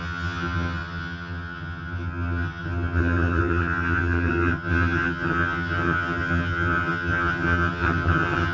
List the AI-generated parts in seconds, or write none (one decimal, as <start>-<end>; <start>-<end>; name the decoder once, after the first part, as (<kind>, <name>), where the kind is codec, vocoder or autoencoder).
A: 0.0-8.5 (vocoder, HiFi-GAN)